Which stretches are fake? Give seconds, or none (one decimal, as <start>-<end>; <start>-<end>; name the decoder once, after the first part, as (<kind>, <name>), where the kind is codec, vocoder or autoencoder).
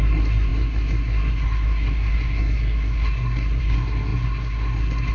0.0-5.1 (codec, SNAC)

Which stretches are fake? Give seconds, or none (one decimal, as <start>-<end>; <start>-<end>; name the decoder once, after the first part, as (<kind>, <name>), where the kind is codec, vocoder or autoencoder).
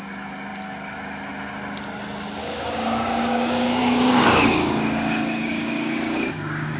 2.4-6.8 (codec, DAC)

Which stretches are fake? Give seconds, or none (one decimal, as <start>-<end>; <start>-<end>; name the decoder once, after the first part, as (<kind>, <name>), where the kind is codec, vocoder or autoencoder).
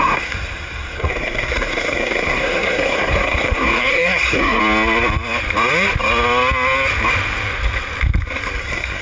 0.0-4.6 (codec, SNAC); 8.6-9.0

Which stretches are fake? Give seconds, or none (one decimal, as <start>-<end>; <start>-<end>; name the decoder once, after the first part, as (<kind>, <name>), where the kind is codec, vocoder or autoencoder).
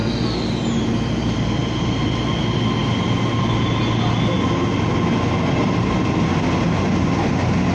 none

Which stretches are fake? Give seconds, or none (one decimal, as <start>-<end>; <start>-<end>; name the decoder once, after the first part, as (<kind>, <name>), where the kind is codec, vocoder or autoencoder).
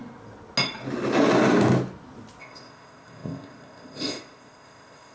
2.4-5.1 (codec, ZipCodec)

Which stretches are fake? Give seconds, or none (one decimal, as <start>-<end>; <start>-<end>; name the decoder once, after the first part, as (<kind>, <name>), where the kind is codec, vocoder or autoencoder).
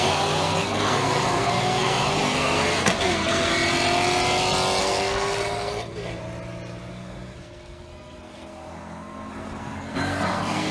0.0-3.5 (codec, SNAC); 4.8-6.2; 6.9-10.7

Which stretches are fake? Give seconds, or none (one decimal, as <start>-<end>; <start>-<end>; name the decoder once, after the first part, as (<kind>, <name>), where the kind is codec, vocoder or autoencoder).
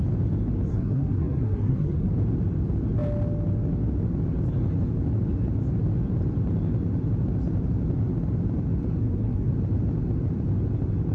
0.7-2.1 (codec, SNAC); 9.0-9.5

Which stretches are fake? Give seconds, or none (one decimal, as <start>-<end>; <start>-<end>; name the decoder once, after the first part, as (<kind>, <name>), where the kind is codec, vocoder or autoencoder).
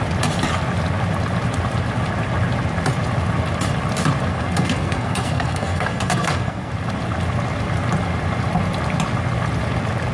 4.3-6.7 (codec, SNAC)